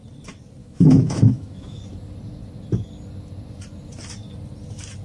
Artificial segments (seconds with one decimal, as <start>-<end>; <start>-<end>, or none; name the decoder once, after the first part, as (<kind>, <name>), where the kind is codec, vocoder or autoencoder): 0.6-1.8 (autoencoder, DAC-VAE)